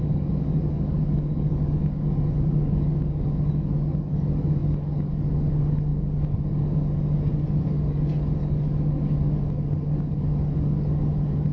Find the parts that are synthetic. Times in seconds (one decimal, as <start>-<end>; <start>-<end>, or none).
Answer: 0.0-11.5